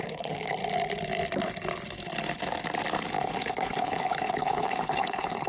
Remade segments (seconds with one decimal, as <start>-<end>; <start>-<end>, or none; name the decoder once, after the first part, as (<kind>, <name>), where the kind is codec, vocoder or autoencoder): 0.0-0.6 (codec, HILCodec); 3.2-5.5